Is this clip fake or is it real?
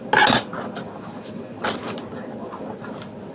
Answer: real